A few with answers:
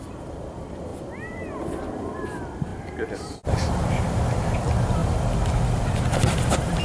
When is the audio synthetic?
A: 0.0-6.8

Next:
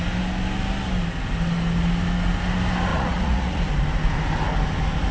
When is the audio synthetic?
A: 2.9-3.6

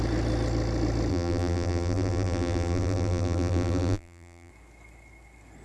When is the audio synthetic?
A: 1.1-4.5

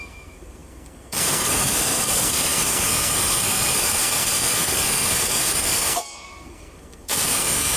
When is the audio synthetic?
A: 0.0-7.8

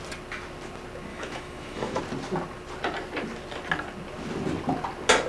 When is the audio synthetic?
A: 1.1-2.0

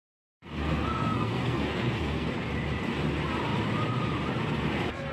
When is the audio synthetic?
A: 0.0-2.3

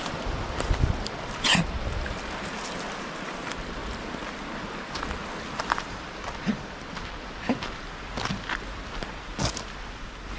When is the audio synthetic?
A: 0.0-3.8; 5.6-10.4